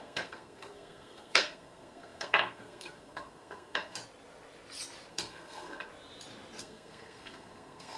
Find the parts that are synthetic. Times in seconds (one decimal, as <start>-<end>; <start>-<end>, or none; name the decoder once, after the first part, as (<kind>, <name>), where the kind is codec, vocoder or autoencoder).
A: 0.0-4.0 (codec, SNAC); 5.1-5.9; 6.6-8.0